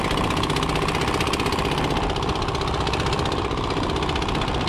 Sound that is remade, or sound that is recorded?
recorded